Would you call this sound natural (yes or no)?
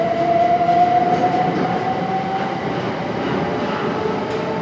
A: yes